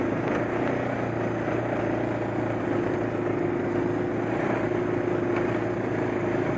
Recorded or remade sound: recorded